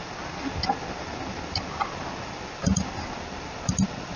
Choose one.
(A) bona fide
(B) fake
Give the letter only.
A